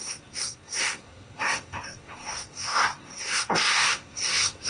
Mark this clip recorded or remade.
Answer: remade